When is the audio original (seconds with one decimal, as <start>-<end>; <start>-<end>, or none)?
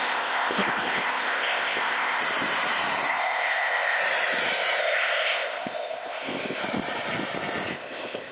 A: 2.2-3.1; 4.0-4.8; 6.6-7.7